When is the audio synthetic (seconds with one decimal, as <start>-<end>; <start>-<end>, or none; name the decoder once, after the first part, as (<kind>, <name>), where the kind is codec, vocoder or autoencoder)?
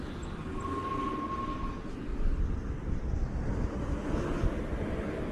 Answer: none